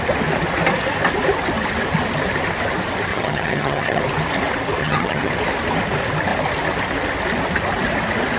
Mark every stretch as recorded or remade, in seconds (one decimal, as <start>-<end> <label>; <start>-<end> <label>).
0.0-3.1 recorded; 3.1-4.0 remade; 4.0-4.8 recorded; 4.8-5.3 remade; 5.3-8.4 recorded